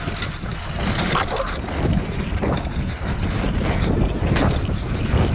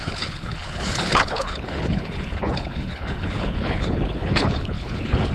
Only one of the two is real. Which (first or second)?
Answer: first